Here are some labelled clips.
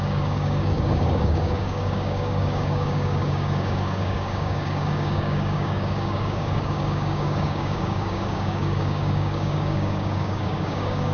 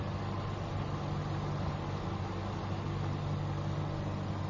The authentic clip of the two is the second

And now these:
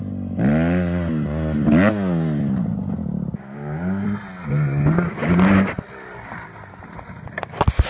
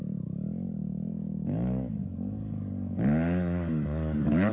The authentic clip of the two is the first